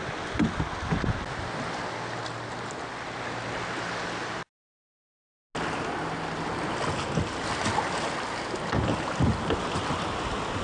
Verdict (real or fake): real